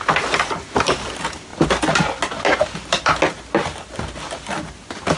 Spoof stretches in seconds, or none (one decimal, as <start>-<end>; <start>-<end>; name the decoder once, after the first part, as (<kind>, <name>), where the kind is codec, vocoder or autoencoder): none